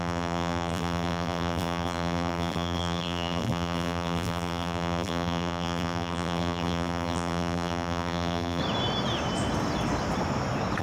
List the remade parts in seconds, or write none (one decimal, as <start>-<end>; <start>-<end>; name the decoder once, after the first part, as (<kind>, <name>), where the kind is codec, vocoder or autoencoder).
0.0-8.6 (vocoder, BigVGAN v2)